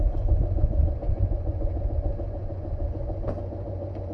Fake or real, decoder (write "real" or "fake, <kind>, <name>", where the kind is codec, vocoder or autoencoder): fake, vocoder, Vocos